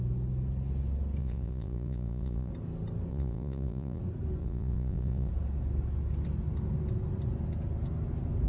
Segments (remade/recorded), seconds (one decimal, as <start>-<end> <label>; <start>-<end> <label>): 0.0-1.2 recorded; 1.2-2.5 remade; 2.5-3.1 recorded; 3.1-4.0 remade; 4.0-4.4 recorded; 4.4-5.3 remade; 5.3-8.5 recorded